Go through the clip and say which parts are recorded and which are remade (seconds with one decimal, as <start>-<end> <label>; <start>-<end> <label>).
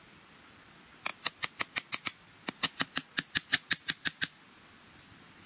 0.0-5.5 recorded